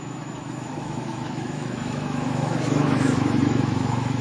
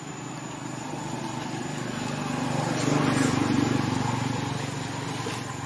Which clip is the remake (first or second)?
first